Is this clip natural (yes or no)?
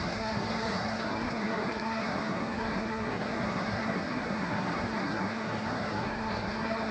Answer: no